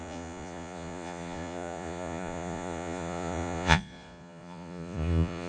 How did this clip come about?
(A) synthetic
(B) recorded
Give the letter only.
A